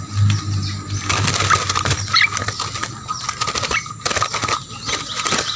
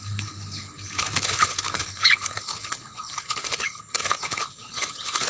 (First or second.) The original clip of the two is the first